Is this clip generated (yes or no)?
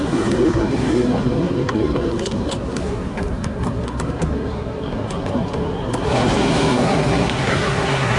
yes